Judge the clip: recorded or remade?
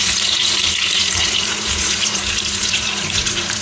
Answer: remade